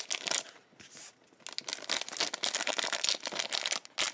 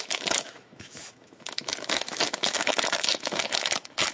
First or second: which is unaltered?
first